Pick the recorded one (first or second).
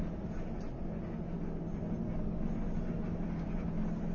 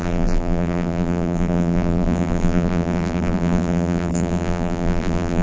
first